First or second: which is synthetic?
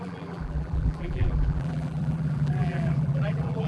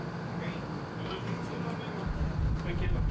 first